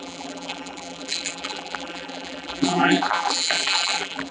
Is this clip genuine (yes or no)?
no